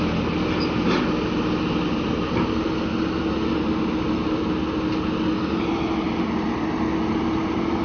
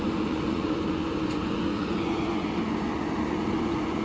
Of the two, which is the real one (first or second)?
first